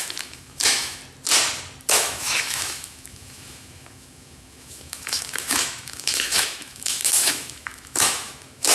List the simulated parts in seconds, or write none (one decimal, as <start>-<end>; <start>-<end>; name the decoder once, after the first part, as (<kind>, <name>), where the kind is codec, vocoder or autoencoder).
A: 0.0-1.0 (autoencoder, DAC-VAE); 1.9-8.7

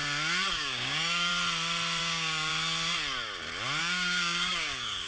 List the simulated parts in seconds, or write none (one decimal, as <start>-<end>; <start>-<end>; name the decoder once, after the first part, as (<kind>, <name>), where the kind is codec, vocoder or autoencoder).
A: 0.5-1.3 (codec, DAC); 2.0-2.5; 3.8-5.1

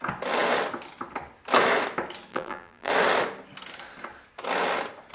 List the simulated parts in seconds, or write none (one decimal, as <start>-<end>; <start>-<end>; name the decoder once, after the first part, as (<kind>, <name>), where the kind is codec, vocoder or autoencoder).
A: 2.3-2.9 (vocoder, BigVGAN v2)